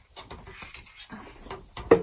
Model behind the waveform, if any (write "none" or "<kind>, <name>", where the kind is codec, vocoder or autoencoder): none